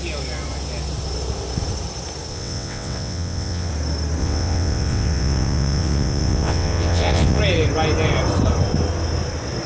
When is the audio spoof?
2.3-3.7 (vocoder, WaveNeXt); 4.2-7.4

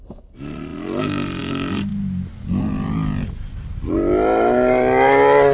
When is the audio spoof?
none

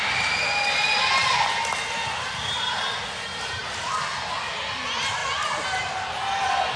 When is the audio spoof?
none

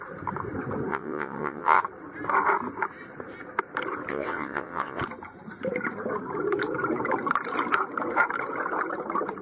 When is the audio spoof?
0.9-1.8 (vocoder, WaveNeXt); 4.1-5.0

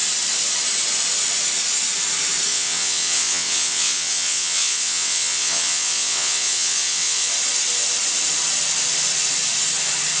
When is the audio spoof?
2.5-7.3 (vocoder, WaveNeXt)